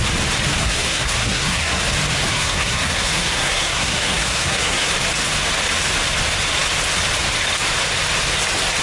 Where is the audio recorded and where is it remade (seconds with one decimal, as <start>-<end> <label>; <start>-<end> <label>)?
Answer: 0.0-0.6 recorded; 0.6-1.8 remade; 1.8-2.3 recorded; 2.3-4.9 remade; 4.9-8.8 recorded

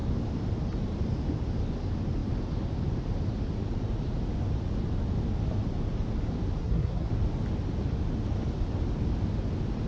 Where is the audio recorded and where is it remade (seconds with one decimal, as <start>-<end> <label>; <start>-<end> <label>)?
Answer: 0.0-6.6 recorded; 6.6-7.1 remade; 7.1-9.9 recorded

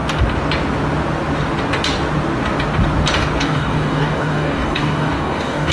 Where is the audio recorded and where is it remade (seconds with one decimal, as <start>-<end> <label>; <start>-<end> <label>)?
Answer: 0.0-3.4 recorded; 3.4-5.7 remade

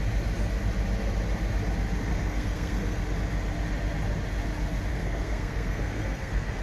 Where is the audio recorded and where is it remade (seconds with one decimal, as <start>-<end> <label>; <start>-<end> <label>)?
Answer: 0.0-2.1 recorded; 2.1-3.0 remade; 3.0-4.9 recorded; 4.9-6.6 remade

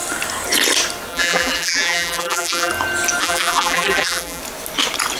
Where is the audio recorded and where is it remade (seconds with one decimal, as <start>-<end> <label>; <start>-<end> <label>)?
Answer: 0.0-1.1 recorded; 1.1-2.7 remade; 2.7-3.2 recorded; 3.2-4.4 remade; 4.4-5.2 recorded

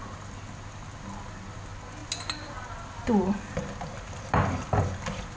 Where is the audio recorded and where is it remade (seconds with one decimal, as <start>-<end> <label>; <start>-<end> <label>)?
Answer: 0.0-5.4 recorded

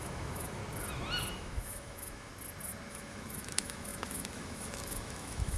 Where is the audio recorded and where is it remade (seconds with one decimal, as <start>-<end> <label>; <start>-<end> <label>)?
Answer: 0.0-0.6 remade; 0.6-1.3 recorded; 1.3-2.3 remade; 2.3-2.9 recorded; 2.9-5.6 remade

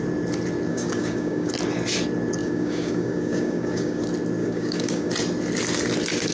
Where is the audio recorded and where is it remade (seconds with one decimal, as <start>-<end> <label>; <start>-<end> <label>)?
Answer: 0.0-0.7 recorded; 0.7-1.5 remade; 1.5-2.4 recorded; 2.4-4.0 remade; 4.0-4.4 recorded; 4.4-5.1 remade; 5.1-6.3 recorded